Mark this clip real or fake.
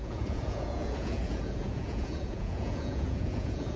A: fake